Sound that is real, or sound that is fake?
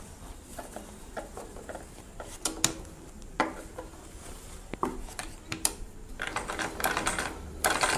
real